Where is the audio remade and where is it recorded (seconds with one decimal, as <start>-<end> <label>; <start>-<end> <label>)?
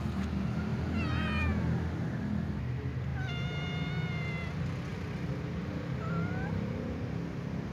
0.0-4.9 recorded; 4.9-5.5 remade; 5.5-7.7 recorded